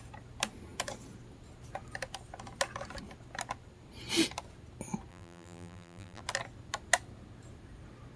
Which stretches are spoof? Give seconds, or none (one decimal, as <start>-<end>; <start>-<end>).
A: 5.1-6.2